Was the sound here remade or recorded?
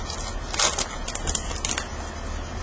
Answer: recorded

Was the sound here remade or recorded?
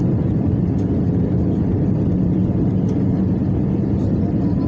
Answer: recorded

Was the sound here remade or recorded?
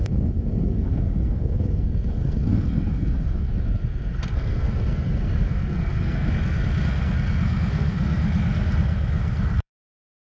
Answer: remade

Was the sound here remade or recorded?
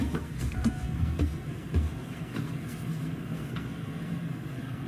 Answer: remade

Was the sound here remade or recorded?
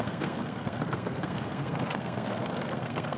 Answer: remade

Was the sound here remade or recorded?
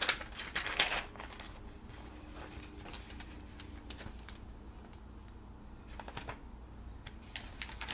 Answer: recorded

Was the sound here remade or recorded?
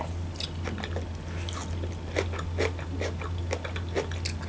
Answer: recorded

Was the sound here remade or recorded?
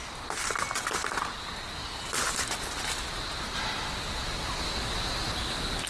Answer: recorded